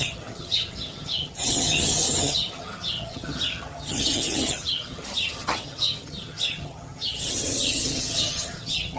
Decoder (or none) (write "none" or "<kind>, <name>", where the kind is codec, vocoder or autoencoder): vocoder, HiFi-GAN